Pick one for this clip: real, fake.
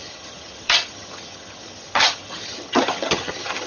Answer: fake